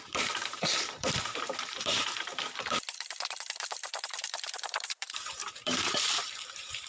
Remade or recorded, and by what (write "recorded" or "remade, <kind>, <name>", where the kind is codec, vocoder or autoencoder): remade, vocoder, BigVGAN v2